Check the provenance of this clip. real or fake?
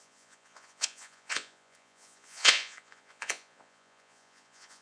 fake